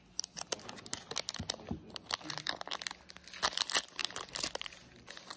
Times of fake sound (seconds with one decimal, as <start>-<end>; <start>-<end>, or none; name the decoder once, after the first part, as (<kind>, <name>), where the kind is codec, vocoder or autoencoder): none